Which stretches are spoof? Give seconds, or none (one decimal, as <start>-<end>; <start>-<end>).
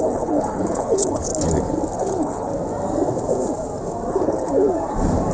0.0-1.3; 2.0-2.5; 4.1-4.5